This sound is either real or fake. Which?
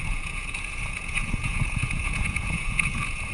fake